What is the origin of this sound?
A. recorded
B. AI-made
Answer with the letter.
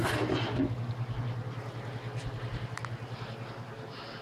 A